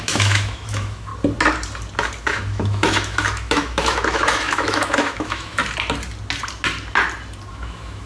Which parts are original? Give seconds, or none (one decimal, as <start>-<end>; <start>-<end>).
1.1-2.2; 5.6-7.5